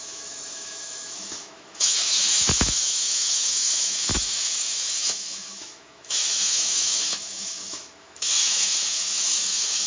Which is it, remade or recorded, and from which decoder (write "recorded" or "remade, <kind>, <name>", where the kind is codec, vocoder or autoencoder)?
remade, autoencoder, DAC-VAE